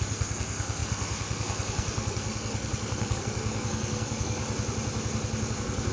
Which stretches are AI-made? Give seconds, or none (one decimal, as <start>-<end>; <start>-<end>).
0.0-4.4; 5.5-5.9